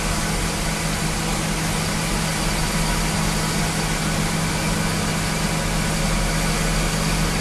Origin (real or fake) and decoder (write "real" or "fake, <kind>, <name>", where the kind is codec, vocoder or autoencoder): real